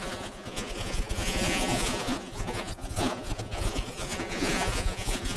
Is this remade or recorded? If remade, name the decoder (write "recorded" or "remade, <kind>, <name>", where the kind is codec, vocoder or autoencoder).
remade, vocoder, Vocos